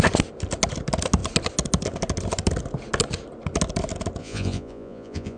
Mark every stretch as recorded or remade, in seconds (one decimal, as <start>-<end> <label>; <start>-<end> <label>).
0.0-4.2 recorded; 4.2-5.4 remade